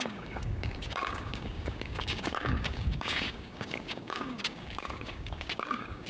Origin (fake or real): fake